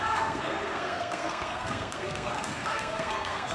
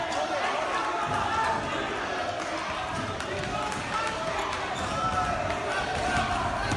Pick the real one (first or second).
second